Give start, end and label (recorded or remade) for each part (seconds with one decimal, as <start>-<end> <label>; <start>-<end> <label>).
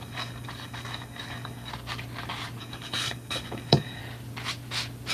0.0-1.7 remade; 1.7-2.6 recorded; 2.6-4.0 remade; 4.0-5.1 recorded